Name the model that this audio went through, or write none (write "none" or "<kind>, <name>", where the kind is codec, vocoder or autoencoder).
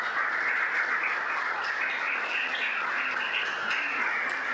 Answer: none